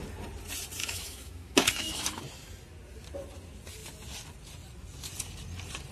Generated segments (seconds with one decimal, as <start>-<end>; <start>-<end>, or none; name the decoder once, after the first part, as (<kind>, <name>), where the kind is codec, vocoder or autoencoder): 0.8-2.2 (autoencoder, DAC-VAE)